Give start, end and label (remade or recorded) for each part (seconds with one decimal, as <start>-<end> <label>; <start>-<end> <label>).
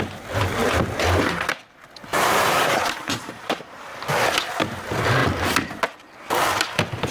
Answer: 0.0-0.6 recorded; 0.6-1.5 remade; 1.5-2.1 recorded; 2.1-3.9 remade; 3.9-7.1 recorded